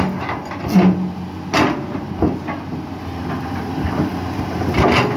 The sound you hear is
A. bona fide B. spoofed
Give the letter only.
A